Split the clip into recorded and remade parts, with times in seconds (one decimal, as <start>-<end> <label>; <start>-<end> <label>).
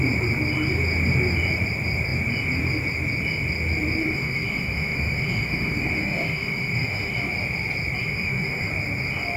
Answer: 0.0-4.0 recorded; 4.0-7.1 remade; 7.1-8.0 recorded; 8.0-8.7 remade; 8.7-9.4 recorded